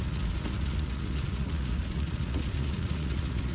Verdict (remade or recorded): remade